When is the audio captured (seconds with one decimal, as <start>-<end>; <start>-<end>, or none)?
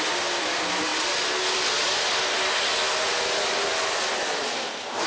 0.0-5.1